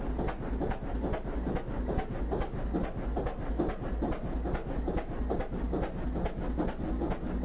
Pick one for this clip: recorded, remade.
recorded